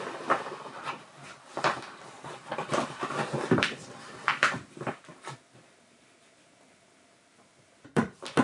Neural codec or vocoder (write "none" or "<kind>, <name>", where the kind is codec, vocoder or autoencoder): vocoder, BigVGAN v2